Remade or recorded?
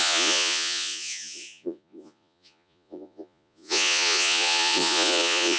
remade